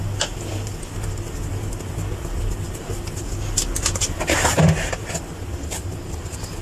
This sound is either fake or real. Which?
real